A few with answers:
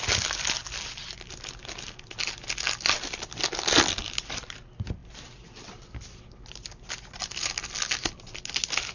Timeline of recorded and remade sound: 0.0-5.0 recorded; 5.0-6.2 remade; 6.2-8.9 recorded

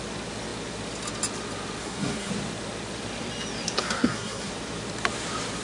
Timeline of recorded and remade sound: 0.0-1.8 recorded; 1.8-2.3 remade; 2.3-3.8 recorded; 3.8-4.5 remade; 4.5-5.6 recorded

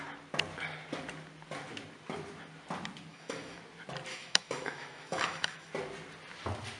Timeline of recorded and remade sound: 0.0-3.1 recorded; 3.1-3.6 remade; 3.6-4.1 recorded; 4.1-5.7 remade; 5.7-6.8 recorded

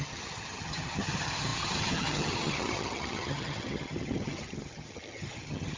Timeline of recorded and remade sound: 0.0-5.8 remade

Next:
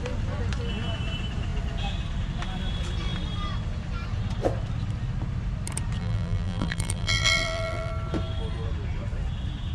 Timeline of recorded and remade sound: 0.0-6.0 recorded; 6.0-7.9 remade; 7.9-9.7 recorded

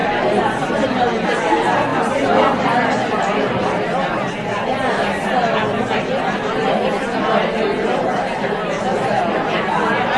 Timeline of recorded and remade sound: 0.0-1.0 remade; 1.0-8.6 recorded; 8.6-9.5 remade; 9.5-10.2 recorded

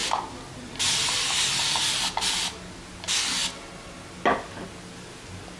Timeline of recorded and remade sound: 0.0-5.6 recorded